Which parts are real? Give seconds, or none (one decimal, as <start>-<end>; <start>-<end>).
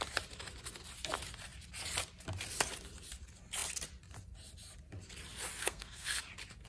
0.0-5.6; 6.2-6.7